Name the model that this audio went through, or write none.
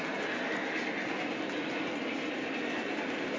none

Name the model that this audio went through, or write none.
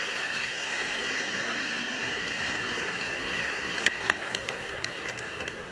codec, SNAC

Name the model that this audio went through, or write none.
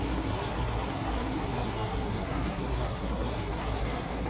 codec, SNAC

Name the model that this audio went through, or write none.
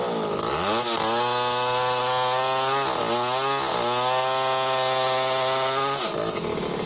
none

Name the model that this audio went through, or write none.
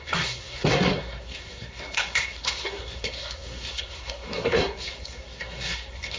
codec, SNAC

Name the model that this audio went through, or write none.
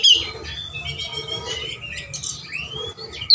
none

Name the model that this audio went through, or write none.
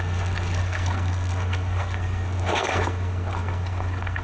codec, SNAC